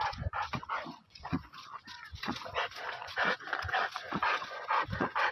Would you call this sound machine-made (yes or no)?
yes